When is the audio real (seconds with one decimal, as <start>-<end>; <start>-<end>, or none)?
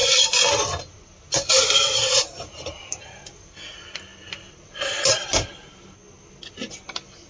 0.0-7.3